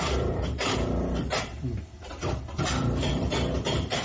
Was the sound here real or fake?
fake